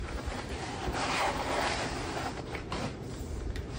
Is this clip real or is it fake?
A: fake